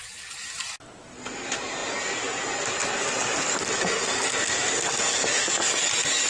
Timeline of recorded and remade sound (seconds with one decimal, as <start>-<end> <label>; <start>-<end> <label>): 0.0-6.3 recorded

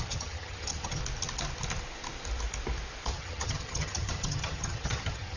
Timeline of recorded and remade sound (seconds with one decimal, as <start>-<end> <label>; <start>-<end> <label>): 0.0-1.0 remade; 1.0-3.1 recorded; 3.1-5.4 remade